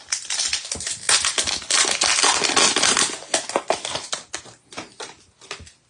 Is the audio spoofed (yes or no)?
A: no